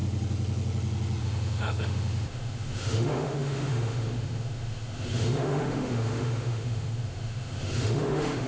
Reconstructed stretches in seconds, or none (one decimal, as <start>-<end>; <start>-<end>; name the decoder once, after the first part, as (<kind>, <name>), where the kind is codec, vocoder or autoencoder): 1.2-8.5 (autoencoder, DAC-VAE)